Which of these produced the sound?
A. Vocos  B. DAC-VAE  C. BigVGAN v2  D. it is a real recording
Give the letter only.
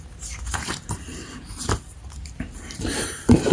C